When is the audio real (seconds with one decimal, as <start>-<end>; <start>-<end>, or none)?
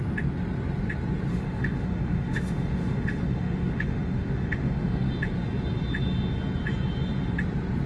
0.0-1.3; 5.1-7.9